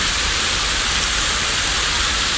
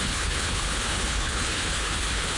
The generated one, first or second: second